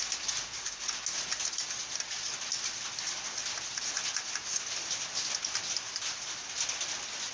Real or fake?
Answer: real